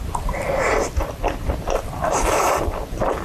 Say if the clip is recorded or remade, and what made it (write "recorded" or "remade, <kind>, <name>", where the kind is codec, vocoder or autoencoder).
recorded